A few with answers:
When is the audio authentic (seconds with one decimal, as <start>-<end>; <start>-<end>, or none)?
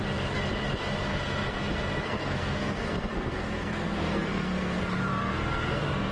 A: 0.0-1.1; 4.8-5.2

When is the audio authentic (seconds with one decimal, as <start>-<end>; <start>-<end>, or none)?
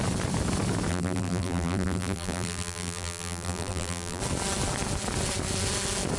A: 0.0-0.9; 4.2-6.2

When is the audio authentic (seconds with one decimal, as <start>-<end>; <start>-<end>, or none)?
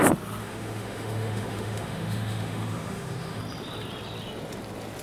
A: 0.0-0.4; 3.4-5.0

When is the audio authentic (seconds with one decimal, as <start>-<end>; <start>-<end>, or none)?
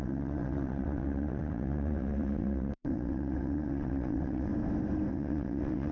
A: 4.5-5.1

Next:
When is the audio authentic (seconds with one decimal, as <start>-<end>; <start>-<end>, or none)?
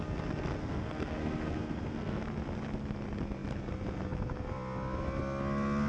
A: 0.0-0.6; 2.2-5.9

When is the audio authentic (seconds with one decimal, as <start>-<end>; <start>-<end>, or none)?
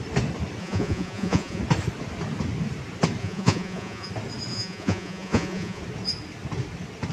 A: 0.0-0.6; 1.6-3.2; 4.1-4.5; 5.8-7.1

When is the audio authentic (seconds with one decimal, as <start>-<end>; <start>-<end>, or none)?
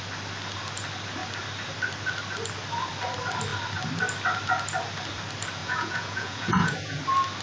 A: 0.0-5.6; 7.0-7.4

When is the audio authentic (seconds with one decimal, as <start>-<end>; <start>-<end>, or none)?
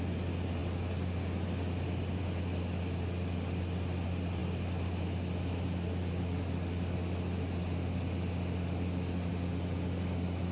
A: 0.0-10.5